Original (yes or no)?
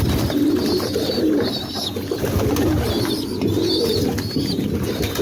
yes